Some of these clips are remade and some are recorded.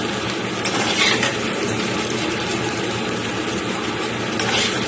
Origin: recorded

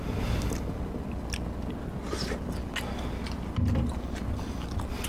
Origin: recorded